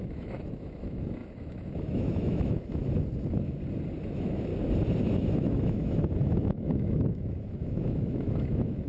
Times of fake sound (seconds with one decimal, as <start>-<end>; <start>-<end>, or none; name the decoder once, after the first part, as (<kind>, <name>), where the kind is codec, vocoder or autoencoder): 0.0-2.8 (autoencoder, DAC-VAE); 4.0-4.5; 5.0-8.9